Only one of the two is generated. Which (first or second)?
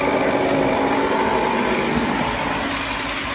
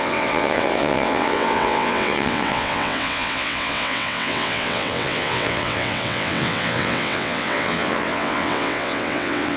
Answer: second